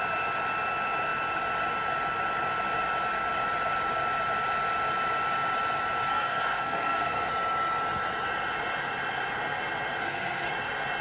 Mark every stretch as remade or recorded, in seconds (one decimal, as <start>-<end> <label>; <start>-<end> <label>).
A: 0.0-6.1 recorded; 6.1-7.3 remade; 7.3-10.0 recorded; 10.0-10.5 remade; 10.5-11.0 recorded